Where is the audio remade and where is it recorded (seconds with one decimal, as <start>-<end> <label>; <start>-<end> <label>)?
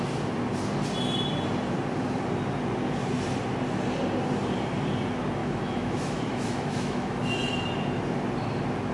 0.0-5.4 recorded; 5.4-7.2 remade; 7.2-8.9 recorded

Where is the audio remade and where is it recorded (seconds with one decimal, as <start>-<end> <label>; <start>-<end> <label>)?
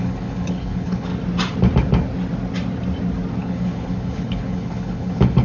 0.0-1.1 remade; 1.1-3.4 recorded; 3.4-5.4 remade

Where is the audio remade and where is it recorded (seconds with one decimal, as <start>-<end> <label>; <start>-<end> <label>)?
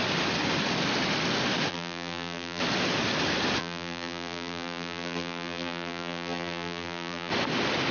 0.0-1.7 recorded; 1.7-2.6 remade; 2.6-3.6 recorded; 3.6-7.3 remade; 7.3-7.9 recorded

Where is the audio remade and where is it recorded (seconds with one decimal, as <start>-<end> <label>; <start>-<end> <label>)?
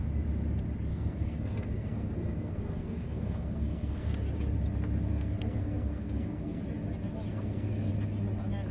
0.0-0.9 recorded; 0.9-4.1 remade; 4.1-5.1 recorded; 5.1-6.6 remade; 6.6-7.3 recorded; 7.3-7.9 remade; 7.9-8.7 recorded